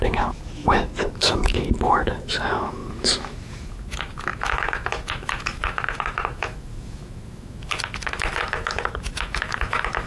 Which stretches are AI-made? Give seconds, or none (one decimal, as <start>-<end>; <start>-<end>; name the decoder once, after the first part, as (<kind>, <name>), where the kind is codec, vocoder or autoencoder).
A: 0.0-10.1 (autoencoder, DAC-VAE)